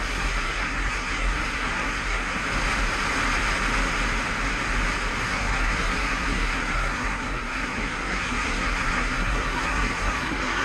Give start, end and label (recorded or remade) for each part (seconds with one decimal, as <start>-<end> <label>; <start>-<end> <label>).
0.0-2.4 remade; 2.4-5.2 recorded; 5.2-10.6 remade